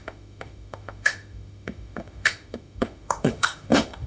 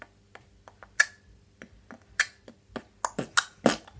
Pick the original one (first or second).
second